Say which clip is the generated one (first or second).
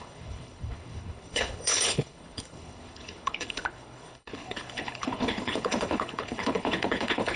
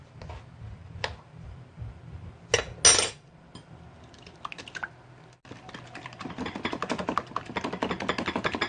first